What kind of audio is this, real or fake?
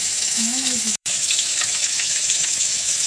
fake